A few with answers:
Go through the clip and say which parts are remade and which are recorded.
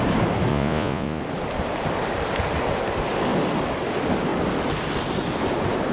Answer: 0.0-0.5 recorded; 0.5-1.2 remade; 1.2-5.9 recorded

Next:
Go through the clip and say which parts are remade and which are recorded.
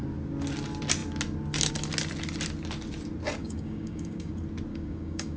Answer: 0.0-3.4 recorded; 3.4-4.3 remade; 4.3-4.7 recorded; 4.7-5.4 remade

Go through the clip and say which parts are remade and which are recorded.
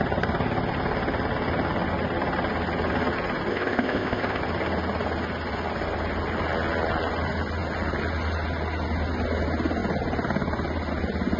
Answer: 0.0-3.5 recorded; 3.5-4.4 remade; 4.4-11.4 recorded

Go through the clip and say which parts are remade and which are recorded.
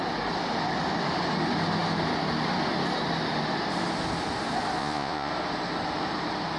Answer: 0.0-4.8 recorded; 4.8-5.3 remade; 5.3-6.6 recorded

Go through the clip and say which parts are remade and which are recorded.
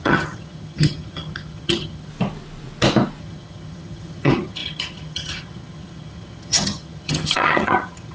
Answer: 0.0-2.1 remade; 2.1-3.2 recorded; 3.2-8.1 remade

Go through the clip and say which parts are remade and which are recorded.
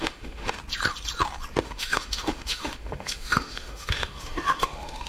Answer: 0.0-0.6 remade; 0.6-1.6 recorded; 1.6-5.1 remade